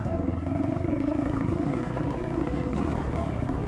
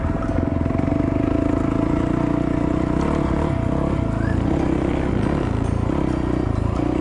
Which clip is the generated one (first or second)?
first